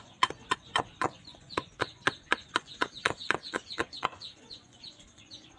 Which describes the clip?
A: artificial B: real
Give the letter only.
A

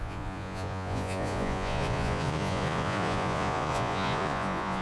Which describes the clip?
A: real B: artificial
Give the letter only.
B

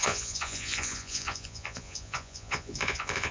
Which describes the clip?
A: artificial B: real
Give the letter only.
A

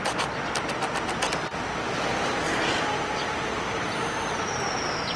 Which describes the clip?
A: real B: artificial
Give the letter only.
A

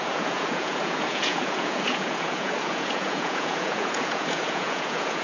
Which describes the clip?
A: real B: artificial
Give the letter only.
B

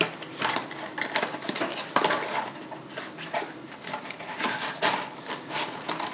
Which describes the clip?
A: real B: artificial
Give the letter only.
A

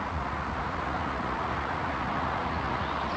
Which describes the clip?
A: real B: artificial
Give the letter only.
B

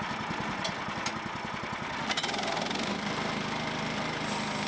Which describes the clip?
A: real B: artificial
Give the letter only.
A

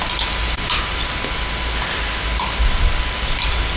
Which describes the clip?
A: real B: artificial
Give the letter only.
A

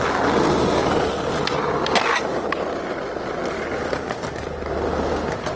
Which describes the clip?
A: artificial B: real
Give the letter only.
B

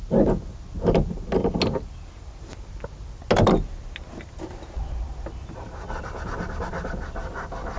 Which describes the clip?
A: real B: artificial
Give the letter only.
A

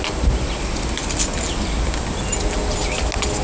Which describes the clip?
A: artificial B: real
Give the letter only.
B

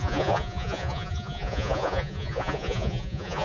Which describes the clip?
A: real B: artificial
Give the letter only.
B